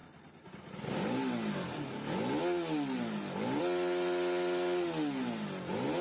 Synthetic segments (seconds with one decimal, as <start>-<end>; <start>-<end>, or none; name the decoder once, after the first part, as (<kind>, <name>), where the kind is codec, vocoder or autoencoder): none